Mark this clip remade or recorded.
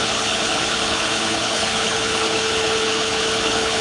remade